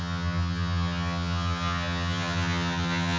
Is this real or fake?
fake